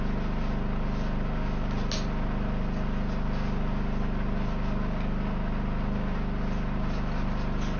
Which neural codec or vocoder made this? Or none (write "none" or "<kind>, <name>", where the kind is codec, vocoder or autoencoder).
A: none